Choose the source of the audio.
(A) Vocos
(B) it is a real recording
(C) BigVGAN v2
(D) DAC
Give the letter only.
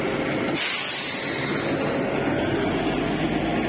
B